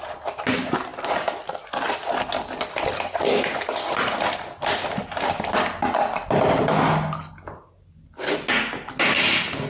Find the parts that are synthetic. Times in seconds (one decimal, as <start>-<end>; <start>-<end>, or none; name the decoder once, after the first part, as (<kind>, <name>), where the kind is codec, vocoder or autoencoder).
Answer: none